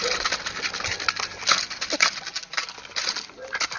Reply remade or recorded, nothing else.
recorded